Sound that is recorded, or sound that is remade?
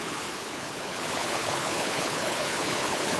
remade